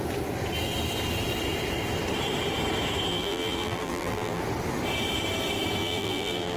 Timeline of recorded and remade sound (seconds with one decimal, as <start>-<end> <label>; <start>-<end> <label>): 0.0-3.1 recorded; 3.1-4.4 remade; 4.4-5.8 recorded; 5.8-6.6 remade